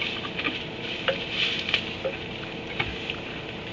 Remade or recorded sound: recorded